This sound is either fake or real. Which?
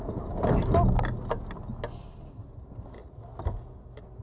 real